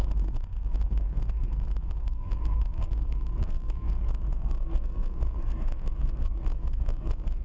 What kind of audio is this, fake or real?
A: fake